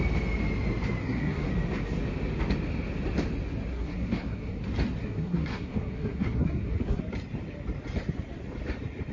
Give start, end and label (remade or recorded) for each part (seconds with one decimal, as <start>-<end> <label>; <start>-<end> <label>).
0.0-1.0 recorded; 1.0-1.5 remade; 1.5-3.7 recorded; 3.7-4.6 remade; 4.6-5.0 recorded; 5.0-7.0 remade; 7.0-9.1 recorded